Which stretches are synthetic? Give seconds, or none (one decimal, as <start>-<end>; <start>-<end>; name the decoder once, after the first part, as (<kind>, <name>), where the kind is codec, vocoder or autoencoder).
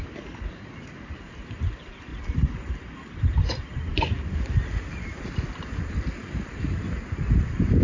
0.0-7.8 (vocoder, BigVGAN v2)